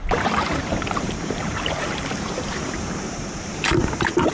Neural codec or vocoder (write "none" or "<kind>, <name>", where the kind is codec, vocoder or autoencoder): vocoder, BigVGAN v2